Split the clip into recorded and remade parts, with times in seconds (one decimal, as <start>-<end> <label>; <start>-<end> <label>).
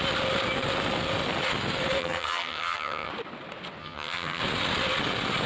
0.0-2.0 recorded; 2.0-3.1 remade; 3.1-3.8 recorded; 3.8-4.4 remade; 4.4-5.5 recorded